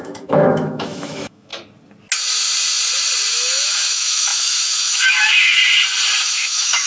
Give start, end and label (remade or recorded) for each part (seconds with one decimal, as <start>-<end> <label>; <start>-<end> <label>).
0.0-1.5 remade; 1.5-3.3 recorded; 3.3-5.6 remade; 5.6-6.2 recorded; 6.2-6.9 remade